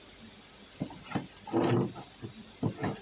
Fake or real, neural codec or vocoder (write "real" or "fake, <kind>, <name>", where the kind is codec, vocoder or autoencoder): real